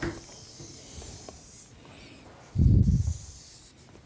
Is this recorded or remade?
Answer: recorded